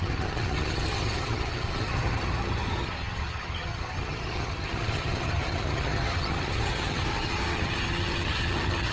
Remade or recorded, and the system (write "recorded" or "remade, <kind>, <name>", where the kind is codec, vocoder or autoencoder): remade, vocoder, HiFi-GAN